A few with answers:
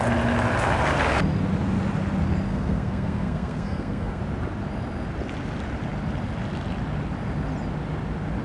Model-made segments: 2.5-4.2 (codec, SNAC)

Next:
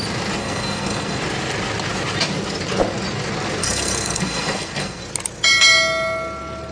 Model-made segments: 0.4-1.2 (codec, SNAC); 3.6-5.0

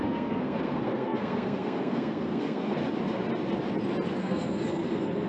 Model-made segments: 0.0-2.8 (codec, SNAC); 4.2-5.3

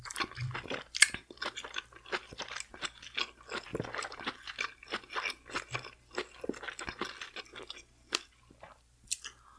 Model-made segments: none

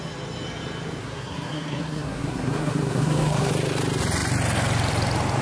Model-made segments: 1.0-3.5 (codec, SNAC)

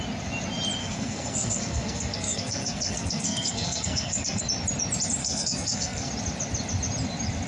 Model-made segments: 0.8-4.4 (codec, SNAC); 5.2-6.1